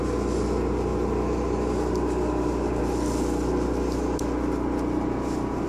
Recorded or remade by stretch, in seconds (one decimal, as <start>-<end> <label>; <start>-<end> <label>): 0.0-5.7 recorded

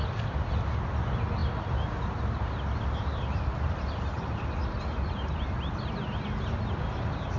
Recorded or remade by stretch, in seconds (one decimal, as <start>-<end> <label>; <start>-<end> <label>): 0.0-7.4 recorded

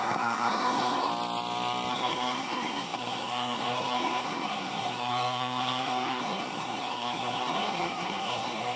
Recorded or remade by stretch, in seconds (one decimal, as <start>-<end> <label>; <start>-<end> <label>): 0.0-1.1 remade; 1.1-1.9 recorded; 1.9-8.8 remade

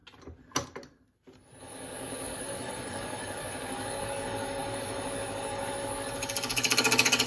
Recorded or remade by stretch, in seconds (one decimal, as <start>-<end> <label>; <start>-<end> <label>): 0.0-1.6 recorded; 1.6-7.3 remade

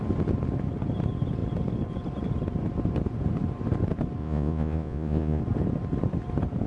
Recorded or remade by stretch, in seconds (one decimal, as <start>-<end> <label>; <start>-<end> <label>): 0.0-4.2 recorded; 4.2-5.4 remade; 5.4-6.7 recorded

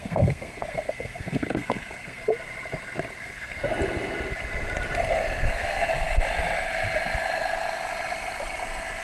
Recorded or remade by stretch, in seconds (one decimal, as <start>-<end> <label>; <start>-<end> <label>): 0.0-2.3 remade; 2.3-3.2 recorded; 3.2-3.6 remade; 3.6-5.4 recorded; 5.4-5.9 remade; 5.9-9.0 recorded

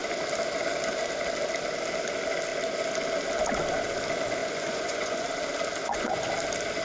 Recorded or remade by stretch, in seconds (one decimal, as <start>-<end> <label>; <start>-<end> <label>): 0.0-4.4 recorded; 4.4-5.3 remade; 5.3-5.8 recorded; 5.8-6.3 remade; 6.3-6.8 recorded

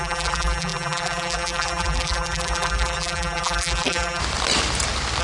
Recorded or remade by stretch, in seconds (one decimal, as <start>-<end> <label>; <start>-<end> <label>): 0.0-4.2 remade; 4.2-5.2 recorded